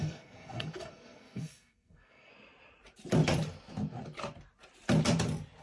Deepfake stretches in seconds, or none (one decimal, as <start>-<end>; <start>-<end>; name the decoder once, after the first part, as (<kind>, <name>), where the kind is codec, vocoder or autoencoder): 0.0-2.3 (codec, SNAC)